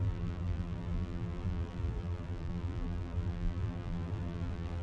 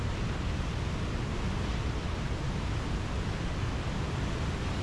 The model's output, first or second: first